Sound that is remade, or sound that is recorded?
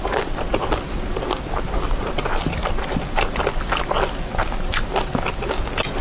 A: recorded